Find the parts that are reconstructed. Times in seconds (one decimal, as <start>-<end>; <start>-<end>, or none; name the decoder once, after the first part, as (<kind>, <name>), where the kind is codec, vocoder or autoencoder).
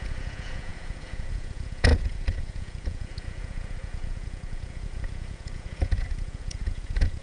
0.0-7.2 (vocoder, Vocos)